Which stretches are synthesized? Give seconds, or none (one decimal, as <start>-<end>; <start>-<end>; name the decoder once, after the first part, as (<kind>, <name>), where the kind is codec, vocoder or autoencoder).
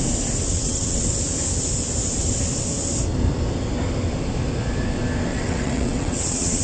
0.5-1.1 (vocoder, WaveNeXt); 5.3-6.6